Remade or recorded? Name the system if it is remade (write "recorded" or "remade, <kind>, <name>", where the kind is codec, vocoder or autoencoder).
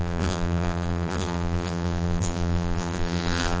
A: remade, vocoder, BigVGAN v2